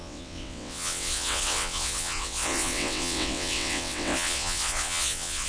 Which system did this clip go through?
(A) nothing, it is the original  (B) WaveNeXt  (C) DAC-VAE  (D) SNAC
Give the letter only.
B